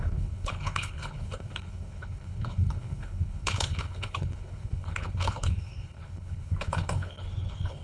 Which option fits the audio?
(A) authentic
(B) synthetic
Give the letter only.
B